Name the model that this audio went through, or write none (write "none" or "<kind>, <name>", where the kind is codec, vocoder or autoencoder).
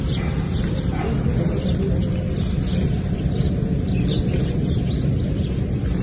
none